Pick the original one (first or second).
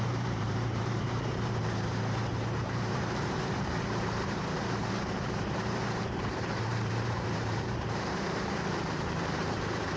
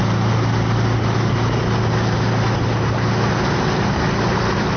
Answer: second